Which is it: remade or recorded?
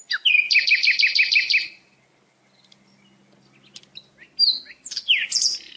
recorded